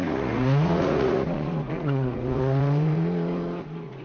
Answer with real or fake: fake